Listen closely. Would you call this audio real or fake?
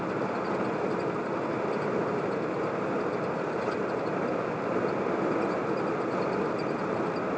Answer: real